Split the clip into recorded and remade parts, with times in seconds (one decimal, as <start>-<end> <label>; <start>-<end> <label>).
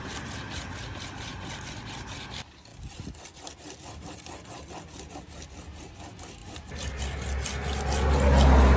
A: 0.0-1.3 recorded; 1.3-1.9 remade; 1.9-6.4 recorded; 6.4-7.0 remade; 7.0-8.8 recorded